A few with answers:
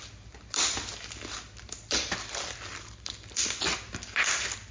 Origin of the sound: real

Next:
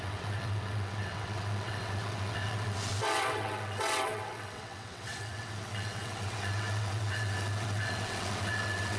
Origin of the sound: fake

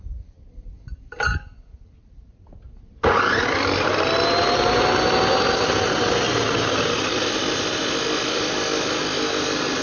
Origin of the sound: real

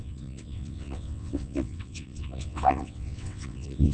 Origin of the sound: fake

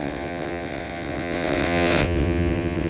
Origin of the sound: fake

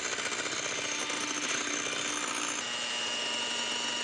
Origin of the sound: real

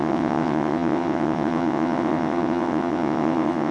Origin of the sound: fake